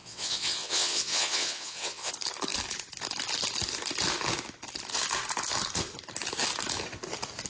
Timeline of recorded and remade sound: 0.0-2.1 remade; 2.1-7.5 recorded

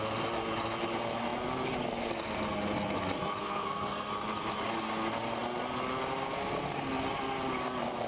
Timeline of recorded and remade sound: 0.0-3.4 recorded; 3.4-4.1 remade; 4.1-8.1 recorded

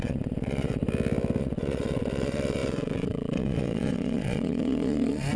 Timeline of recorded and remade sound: 0.0-0.8 remade; 0.8-1.4 recorded; 1.4-5.4 remade

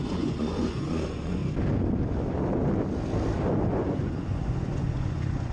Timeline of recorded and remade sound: 0.0-1.4 remade; 1.4-3.7 recorded; 3.7-5.5 remade

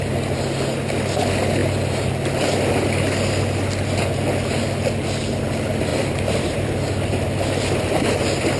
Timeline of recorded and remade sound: 0.0-5.9 recorded; 5.9-6.9 remade; 6.9-8.6 recorded

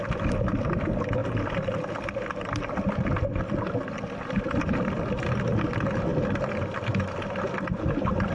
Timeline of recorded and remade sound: 0.0-8.3 recorded

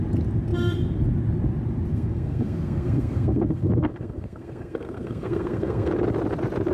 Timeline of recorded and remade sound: 0.0-1.9 recorded; 1.9-5.9 remade; 5.9-6.7 recorded